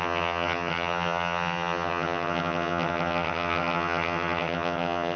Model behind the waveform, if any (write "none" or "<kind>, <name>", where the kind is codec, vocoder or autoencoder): vocoder, HiFi-GAN